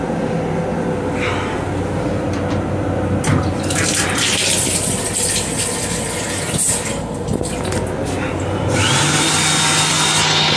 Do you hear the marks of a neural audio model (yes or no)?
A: no